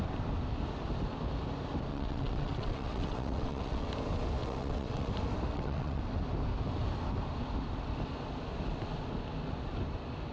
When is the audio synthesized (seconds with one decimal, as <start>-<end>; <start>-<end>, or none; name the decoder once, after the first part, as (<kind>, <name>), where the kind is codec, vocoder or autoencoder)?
1.9-3.9 (vocoder, WaveNeXt); 4.4-5.1; 5.5-6.0